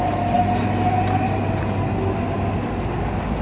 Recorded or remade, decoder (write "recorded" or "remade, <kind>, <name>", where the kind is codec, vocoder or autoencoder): recorded